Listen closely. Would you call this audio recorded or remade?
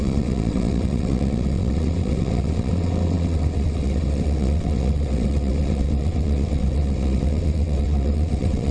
remade